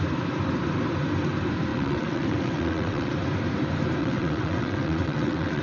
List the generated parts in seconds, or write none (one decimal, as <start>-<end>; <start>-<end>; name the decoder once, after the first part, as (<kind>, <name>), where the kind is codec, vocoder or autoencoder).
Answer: 1.7-3.1 (vocoder, WaveNeXt); 4.0-5.6